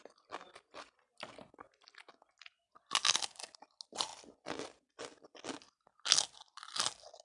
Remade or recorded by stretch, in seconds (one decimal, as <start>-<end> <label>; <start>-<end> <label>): 0.0-7.2 recorded